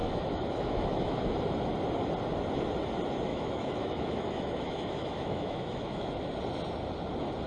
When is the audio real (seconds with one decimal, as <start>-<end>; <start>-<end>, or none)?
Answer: 1.1-3.3; 6.3-7.5